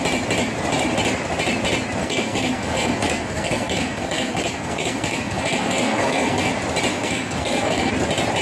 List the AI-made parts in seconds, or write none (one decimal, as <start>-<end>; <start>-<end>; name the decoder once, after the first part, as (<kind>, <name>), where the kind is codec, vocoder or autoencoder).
2.0-6.5 (codec, SNAC); 6.9-7.9